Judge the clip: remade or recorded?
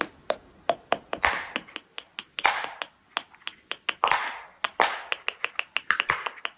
recorded